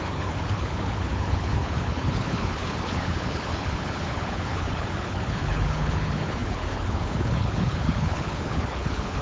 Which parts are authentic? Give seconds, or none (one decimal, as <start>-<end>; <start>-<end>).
none

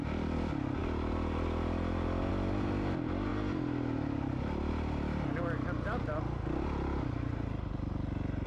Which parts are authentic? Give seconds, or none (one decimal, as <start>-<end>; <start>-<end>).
0.0-8.5

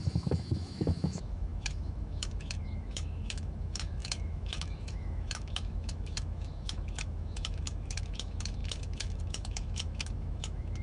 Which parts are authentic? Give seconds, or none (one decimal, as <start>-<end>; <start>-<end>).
none

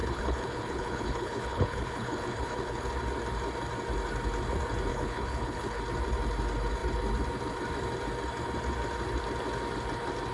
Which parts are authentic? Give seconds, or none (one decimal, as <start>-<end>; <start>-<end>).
2.9-4.9; 5.8-10.3